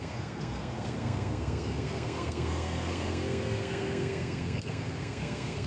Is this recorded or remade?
remade